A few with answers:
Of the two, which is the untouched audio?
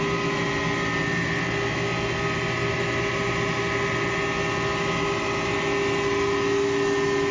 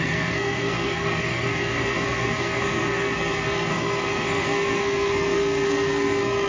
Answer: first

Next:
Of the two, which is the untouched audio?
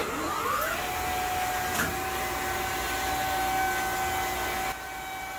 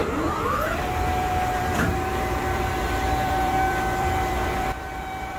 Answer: first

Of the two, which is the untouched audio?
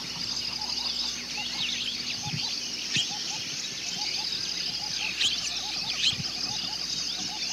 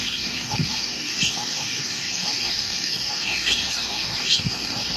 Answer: first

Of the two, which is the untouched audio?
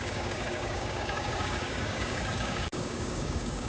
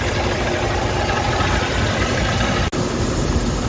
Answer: second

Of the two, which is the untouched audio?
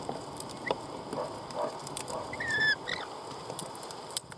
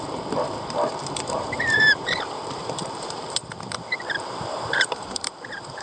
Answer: first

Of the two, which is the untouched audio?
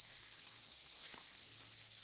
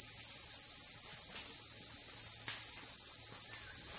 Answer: second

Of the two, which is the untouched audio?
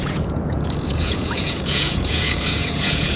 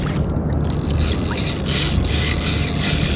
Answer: second